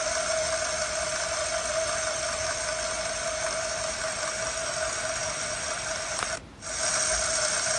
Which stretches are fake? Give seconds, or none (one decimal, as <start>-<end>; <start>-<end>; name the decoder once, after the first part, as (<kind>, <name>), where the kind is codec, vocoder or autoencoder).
none